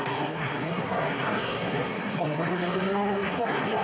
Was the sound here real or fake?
fake